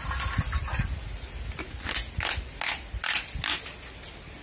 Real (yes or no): yes